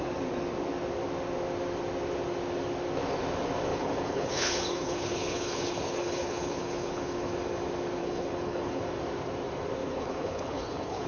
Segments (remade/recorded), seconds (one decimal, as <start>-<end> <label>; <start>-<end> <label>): 0.0-3.7 recorded; 3.7-7.3 remade; 7.3-8.0 recorded; 8.0-8.8 remade; 8.8-9.8 recorded; 9.8-11.1 remade